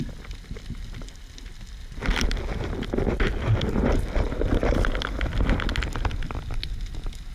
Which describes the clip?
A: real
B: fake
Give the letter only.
A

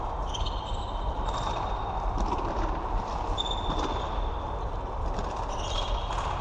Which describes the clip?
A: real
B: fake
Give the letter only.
A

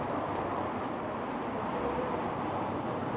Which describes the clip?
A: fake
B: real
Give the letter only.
A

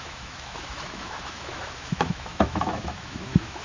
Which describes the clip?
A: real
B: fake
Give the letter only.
B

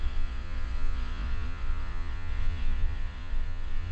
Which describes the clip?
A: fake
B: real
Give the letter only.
A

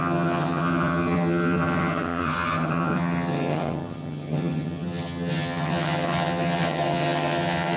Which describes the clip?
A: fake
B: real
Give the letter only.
A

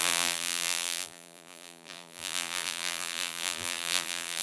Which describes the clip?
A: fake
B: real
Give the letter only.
A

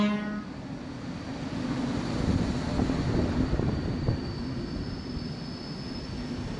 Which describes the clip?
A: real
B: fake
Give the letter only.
A